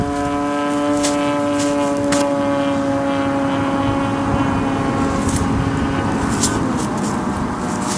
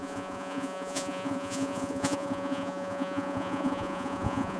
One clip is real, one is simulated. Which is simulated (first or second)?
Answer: second